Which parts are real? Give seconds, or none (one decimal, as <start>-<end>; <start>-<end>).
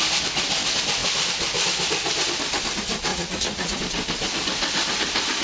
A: 0.0-3.1; 3.8-5.4